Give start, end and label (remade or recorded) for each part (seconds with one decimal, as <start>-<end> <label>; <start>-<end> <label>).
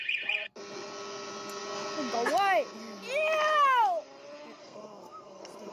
0.0-4.6 recorded; 4.6-5.7 remade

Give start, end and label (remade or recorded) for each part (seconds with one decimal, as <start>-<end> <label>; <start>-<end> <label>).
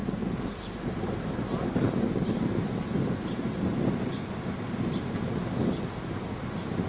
0.0-6.9 recorded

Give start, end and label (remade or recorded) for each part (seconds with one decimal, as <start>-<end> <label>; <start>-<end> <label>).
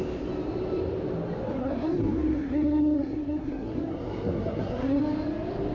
0.0-1.6 recorded; 1.6-5.0 remade; 5.0-5.7 recorded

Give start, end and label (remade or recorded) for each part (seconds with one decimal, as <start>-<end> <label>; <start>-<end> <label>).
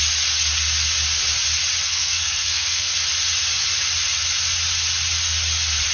0.0-1.8 recorded; 1.8-3.0 remade; 3.0-5.9 recorded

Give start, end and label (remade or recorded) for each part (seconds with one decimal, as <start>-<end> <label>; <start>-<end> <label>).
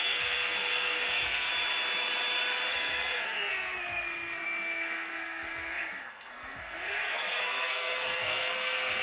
0.0-1.5 remade; 1.5-2.7 recorded; 2.7-9.0 remade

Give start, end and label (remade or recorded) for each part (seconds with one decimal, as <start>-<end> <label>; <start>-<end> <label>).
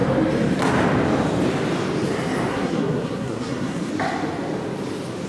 0.0-2.5 recorded; 2.5-3.9 remade; 3.9-5.3 recorded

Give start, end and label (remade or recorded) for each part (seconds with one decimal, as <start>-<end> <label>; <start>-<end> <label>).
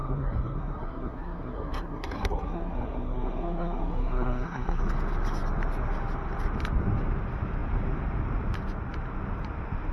0.0-4.8 remade; 4.8-9.9 recorded